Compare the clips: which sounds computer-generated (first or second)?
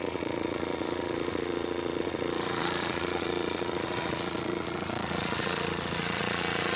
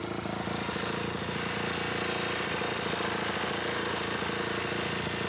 first